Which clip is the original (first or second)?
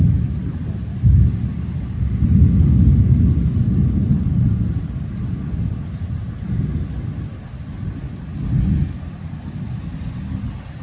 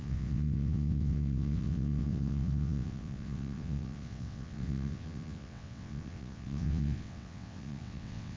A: first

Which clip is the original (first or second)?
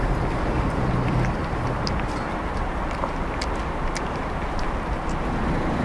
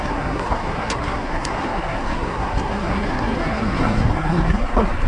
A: first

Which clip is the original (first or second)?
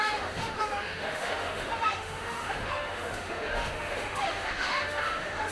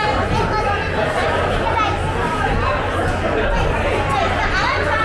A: second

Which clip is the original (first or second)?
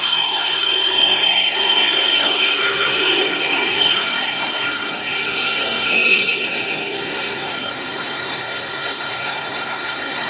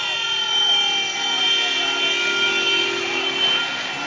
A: second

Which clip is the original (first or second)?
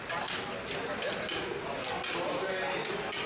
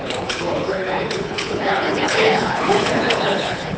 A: first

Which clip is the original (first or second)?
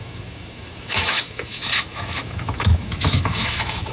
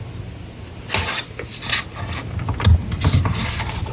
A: second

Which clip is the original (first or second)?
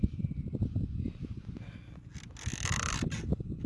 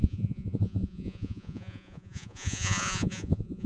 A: first